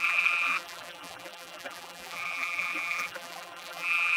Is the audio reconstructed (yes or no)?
yes